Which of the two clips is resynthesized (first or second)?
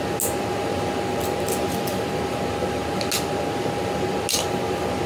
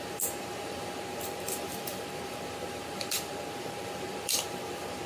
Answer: second